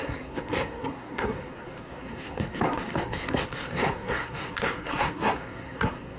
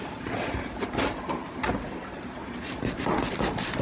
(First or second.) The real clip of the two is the second